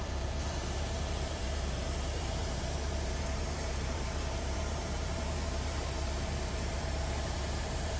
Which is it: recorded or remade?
remade